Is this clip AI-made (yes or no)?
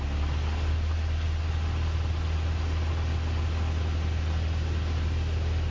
no